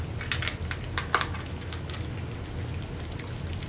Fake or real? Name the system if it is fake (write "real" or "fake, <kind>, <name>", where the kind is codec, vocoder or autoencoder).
real